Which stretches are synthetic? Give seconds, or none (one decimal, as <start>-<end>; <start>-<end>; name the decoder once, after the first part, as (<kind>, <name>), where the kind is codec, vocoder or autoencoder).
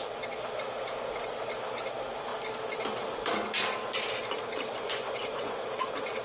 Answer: 4.7-5.6 (vocoder, Vocos)